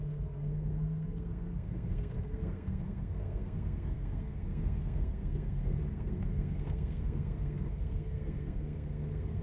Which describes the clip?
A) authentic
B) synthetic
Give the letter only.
B